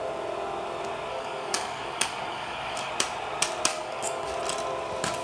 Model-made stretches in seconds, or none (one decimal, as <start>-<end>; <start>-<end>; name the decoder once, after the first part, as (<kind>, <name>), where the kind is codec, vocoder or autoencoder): 1.1-2.9 (codec, DAC); 3.7-4.3